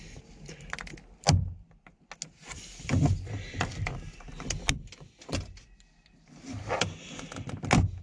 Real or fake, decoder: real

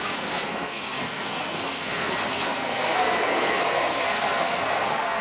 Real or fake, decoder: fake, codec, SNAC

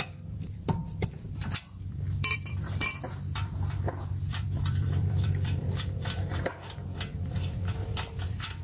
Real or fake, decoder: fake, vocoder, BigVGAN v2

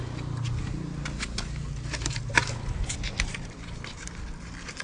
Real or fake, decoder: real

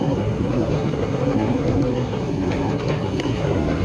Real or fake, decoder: fake, codec, SNAC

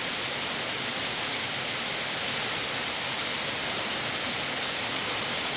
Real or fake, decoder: real